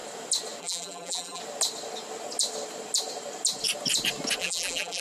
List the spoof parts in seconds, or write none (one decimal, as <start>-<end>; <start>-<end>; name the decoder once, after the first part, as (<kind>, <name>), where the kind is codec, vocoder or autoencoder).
0.6-1.4 (vocoder, BigVGAN v2); 4.4-5.0